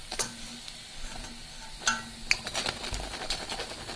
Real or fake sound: real